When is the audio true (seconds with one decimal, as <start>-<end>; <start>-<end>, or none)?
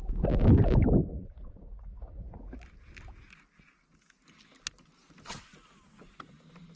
0.0-1.1; 2.5-6.8